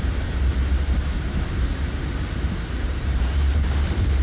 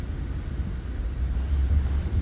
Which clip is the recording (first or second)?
second